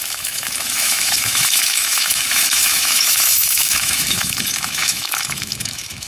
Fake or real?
fake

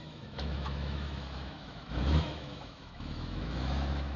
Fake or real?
fake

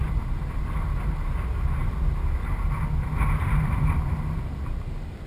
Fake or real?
real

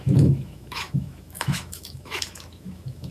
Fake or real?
fake